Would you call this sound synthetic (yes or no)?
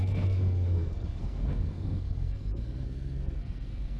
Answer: yes